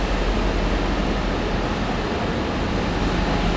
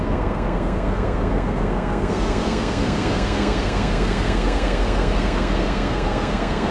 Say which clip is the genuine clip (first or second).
first